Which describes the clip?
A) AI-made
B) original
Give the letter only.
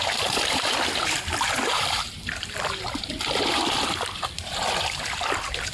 A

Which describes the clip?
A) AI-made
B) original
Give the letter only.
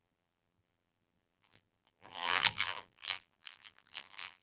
A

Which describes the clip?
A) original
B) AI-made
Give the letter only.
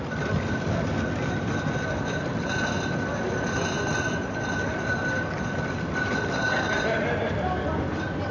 A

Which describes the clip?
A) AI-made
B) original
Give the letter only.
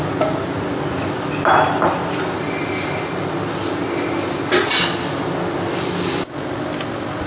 B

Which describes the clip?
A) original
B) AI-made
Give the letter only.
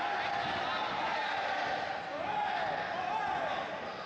A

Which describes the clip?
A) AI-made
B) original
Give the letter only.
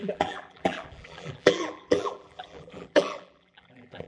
A